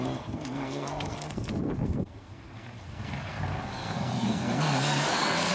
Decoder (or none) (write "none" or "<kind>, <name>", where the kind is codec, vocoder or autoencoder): codec, SNAC